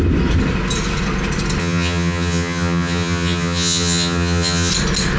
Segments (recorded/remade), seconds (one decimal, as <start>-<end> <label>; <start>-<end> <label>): 0.0-1.6 recorded; 1.6-4.7 remade; 4.7-5.2 recorded